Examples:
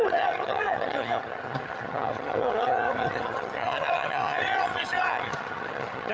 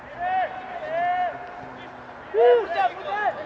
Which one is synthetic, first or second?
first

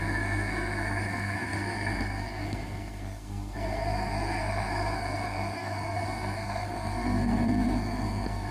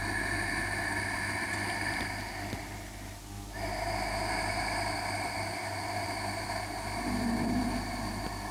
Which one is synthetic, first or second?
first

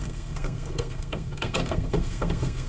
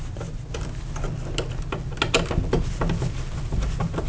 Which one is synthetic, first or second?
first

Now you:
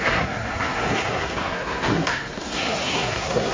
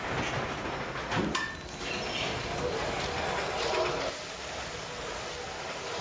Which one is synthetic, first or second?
first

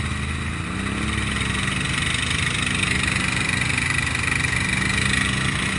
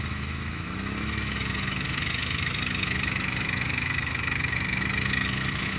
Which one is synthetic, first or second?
second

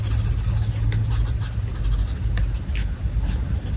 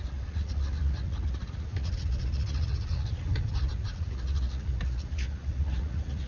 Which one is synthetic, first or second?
second